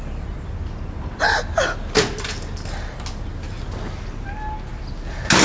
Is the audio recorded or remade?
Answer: recorded